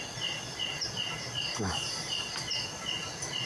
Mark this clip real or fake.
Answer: real